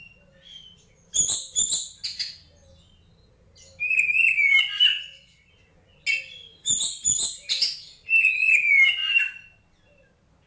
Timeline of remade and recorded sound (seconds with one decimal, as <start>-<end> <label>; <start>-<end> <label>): 0.0-4.9 recorded; 4.9-5.5 remade; 5.5-10.5 recorded